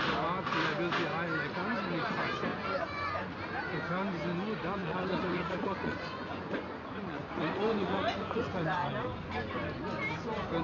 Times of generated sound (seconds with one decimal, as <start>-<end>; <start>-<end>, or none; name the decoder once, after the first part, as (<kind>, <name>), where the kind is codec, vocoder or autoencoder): 2.5-3.1 (vocoder, Vocos); 4.8-8.9